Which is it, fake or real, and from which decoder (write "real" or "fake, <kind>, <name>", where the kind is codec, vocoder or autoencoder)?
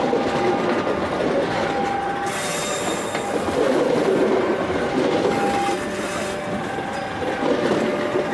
real